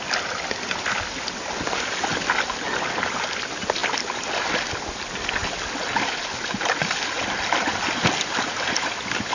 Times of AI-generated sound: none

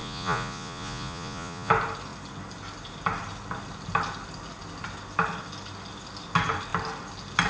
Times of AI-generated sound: 0.0-1.7 (vocoder, Vocos)

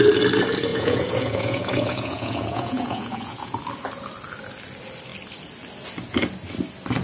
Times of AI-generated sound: 0.7-3.6 (vocoder, Vocos)